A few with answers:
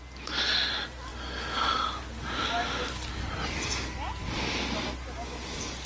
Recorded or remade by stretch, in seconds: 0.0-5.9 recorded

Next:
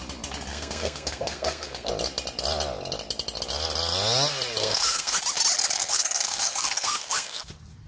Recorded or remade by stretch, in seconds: 0.0-0.5 recorded; 0.5-1.9 remade; 1.9-4.6 recorded; 4.6-5.2 remade; 5.2-5.8 recorded; 5.8-7.5 remade; 7.5-7.9 recorded

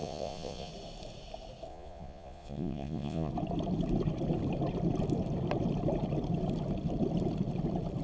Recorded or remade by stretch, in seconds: 0.0-0.7 remade; 0.7-1.7 recorded; 1.7-3.3 remade; 3.3-8.0 recorded